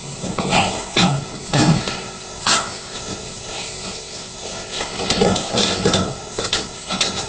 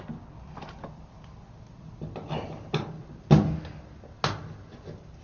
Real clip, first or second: second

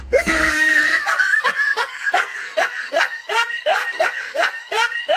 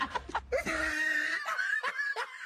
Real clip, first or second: second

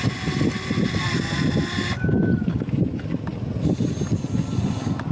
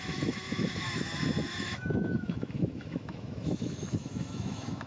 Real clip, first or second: first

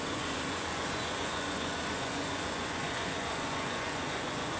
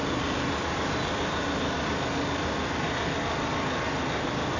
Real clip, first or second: second